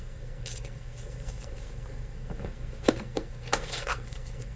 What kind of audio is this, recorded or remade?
remade